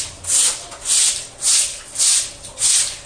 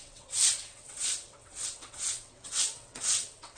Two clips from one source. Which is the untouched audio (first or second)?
first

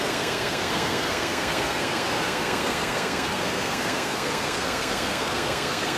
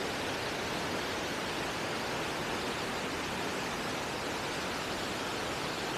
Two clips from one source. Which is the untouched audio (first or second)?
second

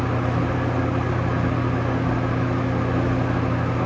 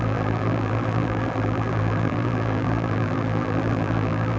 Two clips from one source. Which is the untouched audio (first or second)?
first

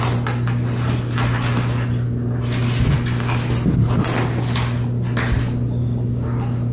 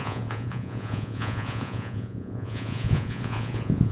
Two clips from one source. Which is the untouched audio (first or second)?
first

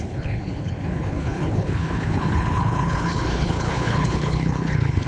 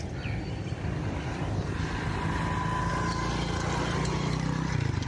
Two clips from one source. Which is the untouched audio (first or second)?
second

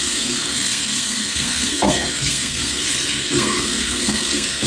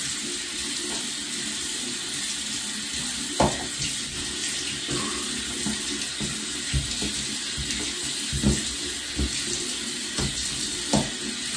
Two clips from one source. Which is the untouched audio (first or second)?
second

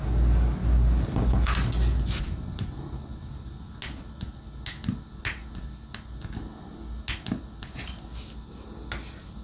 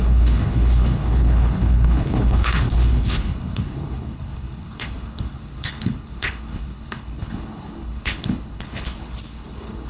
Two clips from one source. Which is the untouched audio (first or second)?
first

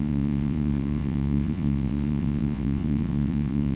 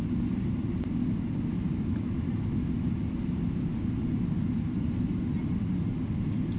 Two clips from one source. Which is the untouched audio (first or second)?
second